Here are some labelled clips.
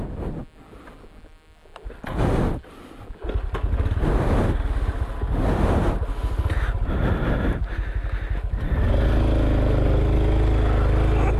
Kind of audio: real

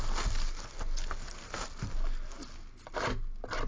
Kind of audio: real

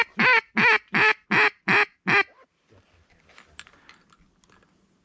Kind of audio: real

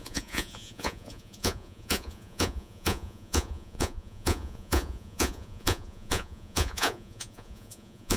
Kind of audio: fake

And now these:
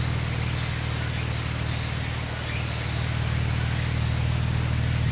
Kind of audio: real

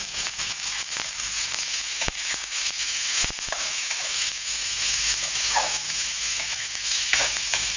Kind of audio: fake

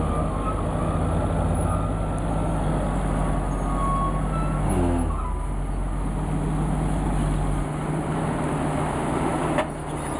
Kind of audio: real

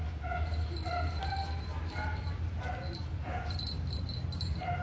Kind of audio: real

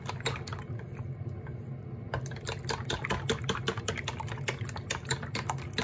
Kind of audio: real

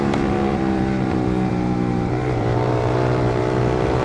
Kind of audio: fake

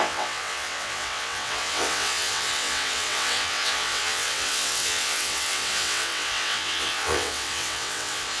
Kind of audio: fake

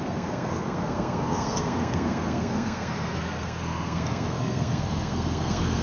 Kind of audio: fake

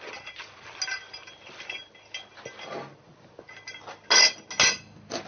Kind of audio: real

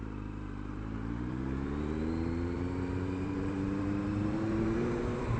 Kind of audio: fake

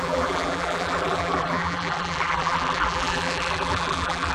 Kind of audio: fake